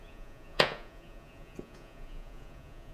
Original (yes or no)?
no